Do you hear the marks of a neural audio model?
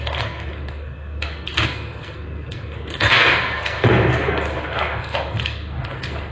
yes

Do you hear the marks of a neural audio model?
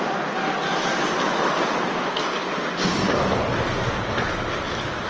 no